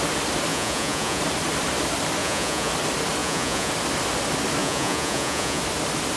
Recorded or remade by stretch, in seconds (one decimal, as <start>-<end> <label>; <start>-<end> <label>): 0.0-0.5 recorded; 0.5-1.2 remade; 1.2-2.2 recorded; 2.2-2.7 remade; 2.7-3.2 recorded; 3.2-3.7 remade; 3.7-4.6 recorded; 4.6-5.6 remade; 5.6-6.2 recorded